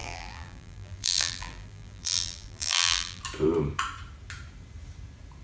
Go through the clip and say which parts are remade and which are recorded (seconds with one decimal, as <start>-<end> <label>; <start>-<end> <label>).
0.0-3.2 remade; 3.2-5.4 recorded